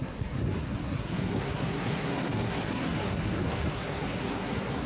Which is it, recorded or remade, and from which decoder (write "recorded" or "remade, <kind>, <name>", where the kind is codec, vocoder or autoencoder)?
remade, codec, SNAC